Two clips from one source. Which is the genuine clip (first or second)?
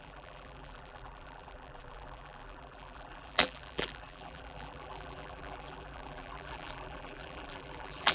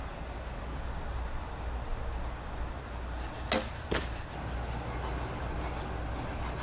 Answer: second